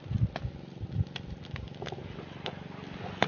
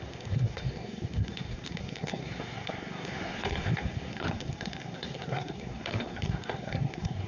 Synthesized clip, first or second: second